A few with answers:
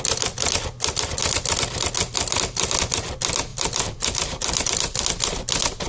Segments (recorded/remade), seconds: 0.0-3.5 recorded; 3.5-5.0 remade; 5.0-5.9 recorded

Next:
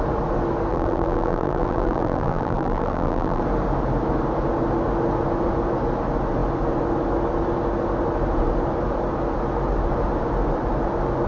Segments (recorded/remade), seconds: 0.0-0.7 recorded; 0.7-3.4 remade; 3.4-11.3 recorded

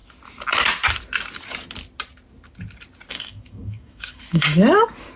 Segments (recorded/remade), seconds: 0.0-3.1 recorded; 3.1-5.2 remade

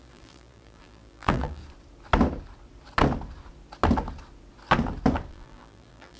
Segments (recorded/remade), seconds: 0.0-1.6 remade; 1.6-5.3 recorded; 5.3-6.2 remade

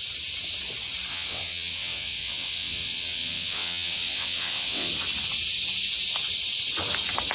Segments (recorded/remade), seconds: 0.0-1.1 recorded; 1.1-4.9 remade; 4.9-7.3 recorded

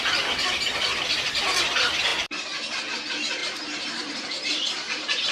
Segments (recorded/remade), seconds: 0.0-3.4 recorded; 3.4-5.3 remade

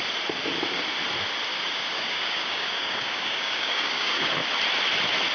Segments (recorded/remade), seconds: 0.0-1.5 recorded; 1.5-4.3 remade; 4.3-5.3 recorded

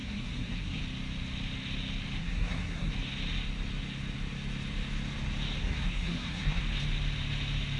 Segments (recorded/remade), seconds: 0.0-0.8 remade; 0.8-2.2 recorded; 2.2-2.9 remade; 2.9-5.6 recorded; 5.6-6.6 remade; 6.6-7.8 recorded